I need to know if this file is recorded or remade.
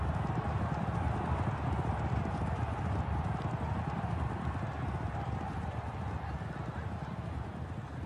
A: recorded